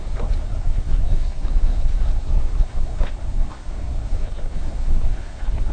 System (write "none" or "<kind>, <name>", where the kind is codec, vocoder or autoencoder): codec, SNAC